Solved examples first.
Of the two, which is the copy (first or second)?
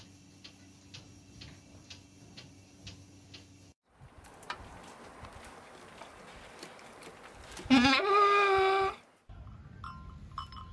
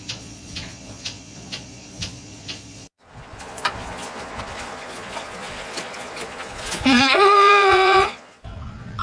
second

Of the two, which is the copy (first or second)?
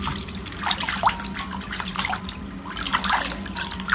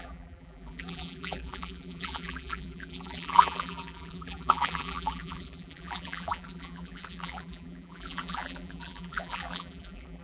second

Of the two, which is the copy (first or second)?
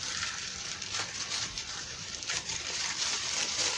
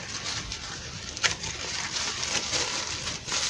first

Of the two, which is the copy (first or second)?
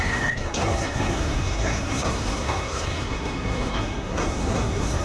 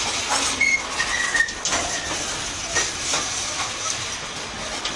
first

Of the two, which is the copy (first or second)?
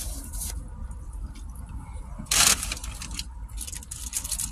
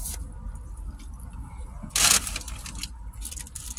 first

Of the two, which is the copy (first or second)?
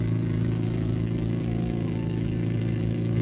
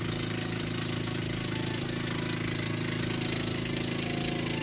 first